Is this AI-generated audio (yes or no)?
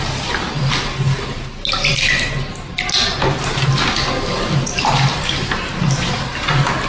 no